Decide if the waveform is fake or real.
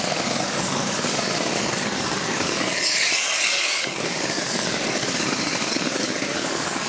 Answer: fake